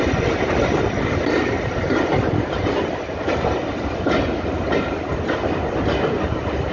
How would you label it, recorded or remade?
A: recorded